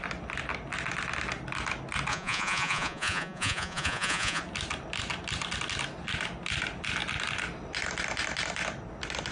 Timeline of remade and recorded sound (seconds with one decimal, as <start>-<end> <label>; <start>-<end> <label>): 0.0-2.1 recorded; 2.1-4.4 remade; 4.4-9.3 recorded